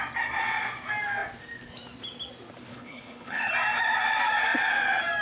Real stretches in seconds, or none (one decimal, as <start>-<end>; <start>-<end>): 0.0-2.7; 3.5-5.2